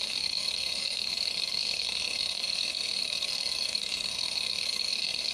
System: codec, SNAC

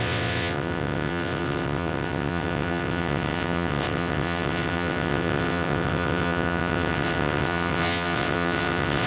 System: vocoder, WaveNeXt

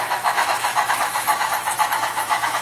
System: autoencoder, DAC-VAE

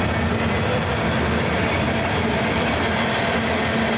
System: none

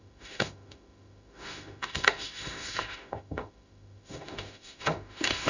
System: autoencoder, DAC-VAE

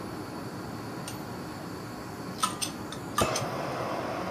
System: none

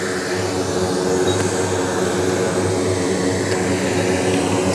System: none